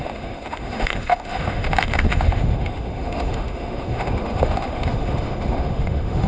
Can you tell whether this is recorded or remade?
remade